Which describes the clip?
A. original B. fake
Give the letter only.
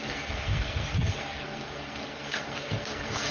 B